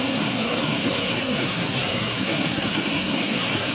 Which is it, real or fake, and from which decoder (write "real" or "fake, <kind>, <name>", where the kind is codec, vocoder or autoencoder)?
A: fake, codec, SNAC